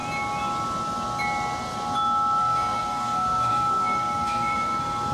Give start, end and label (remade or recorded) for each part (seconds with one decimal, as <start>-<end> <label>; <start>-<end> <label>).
0.0-2.4 recorded; 2.4-5.1 remade